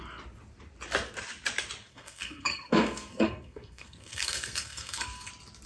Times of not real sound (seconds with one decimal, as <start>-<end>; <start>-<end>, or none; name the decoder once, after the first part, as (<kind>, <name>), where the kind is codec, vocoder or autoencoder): 1.9-5.3 (codec, SNAC)